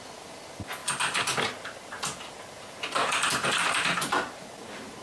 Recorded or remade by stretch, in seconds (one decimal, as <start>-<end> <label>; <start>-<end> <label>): 0.0-5.0 recorded